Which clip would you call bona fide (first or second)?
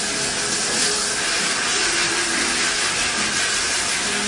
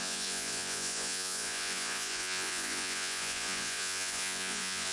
first